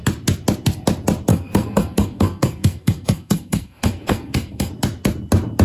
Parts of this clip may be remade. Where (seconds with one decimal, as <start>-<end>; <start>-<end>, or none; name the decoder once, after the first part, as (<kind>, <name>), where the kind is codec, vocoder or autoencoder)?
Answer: 1.3-4.7 (codec, SNAC)